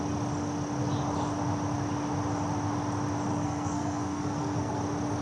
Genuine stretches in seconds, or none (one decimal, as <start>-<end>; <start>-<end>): 0.0-3.3; 4.8-5.2